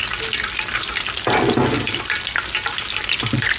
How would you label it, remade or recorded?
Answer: recorded